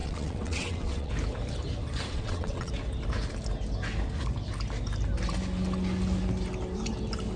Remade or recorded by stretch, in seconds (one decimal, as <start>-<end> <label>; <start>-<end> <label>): 0.0-1.1 remade; 1.1-2.1 recorded; 2.1-2.7 remade; 2.7-7.4 recorded